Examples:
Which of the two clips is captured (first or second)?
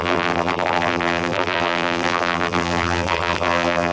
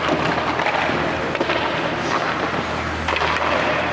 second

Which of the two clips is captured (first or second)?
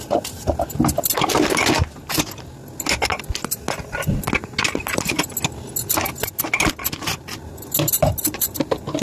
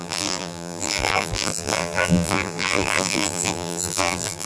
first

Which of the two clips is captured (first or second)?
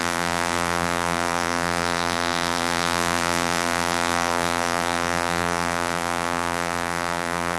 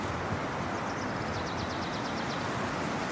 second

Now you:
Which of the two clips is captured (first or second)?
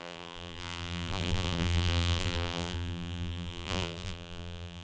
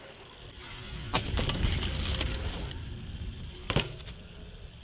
second